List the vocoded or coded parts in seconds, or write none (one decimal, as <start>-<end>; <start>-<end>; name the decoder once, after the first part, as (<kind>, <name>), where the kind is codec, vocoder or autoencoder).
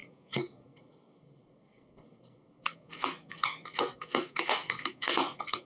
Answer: 0.0-5.6 (codec, SNAC)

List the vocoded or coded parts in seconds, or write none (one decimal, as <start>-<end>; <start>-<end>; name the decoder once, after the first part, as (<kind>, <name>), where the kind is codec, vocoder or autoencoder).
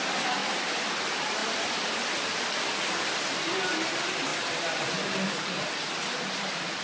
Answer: 0.4-0.9 (vocoder, BigVGAN v2); 1.4-2.7; 4.3-5.3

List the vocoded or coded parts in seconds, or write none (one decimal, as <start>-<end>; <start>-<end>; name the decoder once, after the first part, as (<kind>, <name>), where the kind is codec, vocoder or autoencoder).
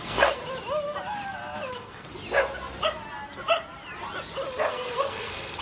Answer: 0.0-0.4 (codec, SNAC); 1.7-2.1; 4.7-5.6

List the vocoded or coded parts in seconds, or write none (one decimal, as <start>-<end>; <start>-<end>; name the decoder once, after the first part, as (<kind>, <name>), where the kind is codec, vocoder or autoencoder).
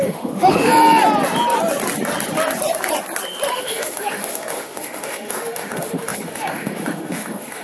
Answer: 0.0-0.7 (autoencoder, DAC-VAE); 3.5-7.6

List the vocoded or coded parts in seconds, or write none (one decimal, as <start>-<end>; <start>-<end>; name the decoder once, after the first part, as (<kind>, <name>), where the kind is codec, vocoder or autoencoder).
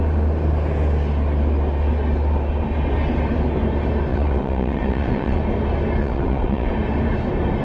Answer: 4.1-5.4 (vocoder, WaveNeXt); 6.0-6.7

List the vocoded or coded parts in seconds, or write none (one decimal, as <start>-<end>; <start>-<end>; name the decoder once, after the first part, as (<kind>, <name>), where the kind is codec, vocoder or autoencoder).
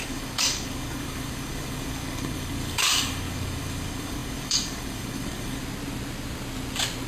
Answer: 0.0-5.6 (codec, DAC)